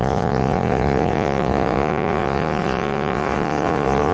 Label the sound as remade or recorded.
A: remade